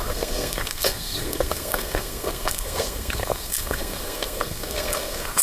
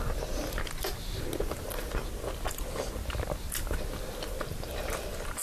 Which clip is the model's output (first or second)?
first